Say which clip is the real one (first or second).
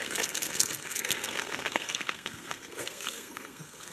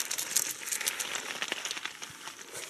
second